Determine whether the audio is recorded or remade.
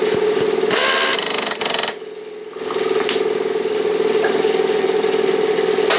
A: recorded